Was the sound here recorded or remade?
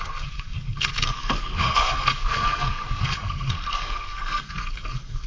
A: remade